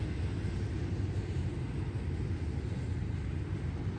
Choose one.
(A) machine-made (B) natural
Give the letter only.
B